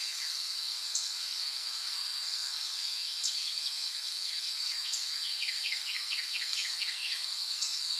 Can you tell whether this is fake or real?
fake